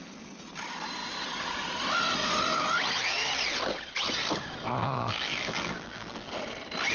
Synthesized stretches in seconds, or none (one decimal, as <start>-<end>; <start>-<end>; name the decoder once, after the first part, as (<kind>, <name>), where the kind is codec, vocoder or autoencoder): 4.8-6.3 (vocoder, BigVGAN v2)